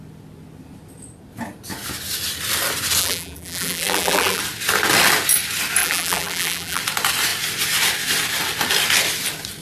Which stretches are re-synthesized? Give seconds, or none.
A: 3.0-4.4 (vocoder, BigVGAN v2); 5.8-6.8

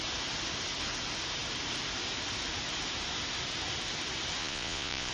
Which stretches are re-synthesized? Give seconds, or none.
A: 4.4-5.1 (vocoder, Vocos)

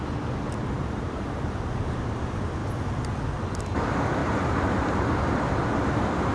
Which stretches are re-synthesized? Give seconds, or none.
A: 0.6-1.8 (vocoder, BigVGAN v2)

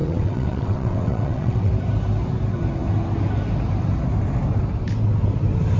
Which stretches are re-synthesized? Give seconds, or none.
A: 0.0-1.7 (vocoder, WaveNeXt)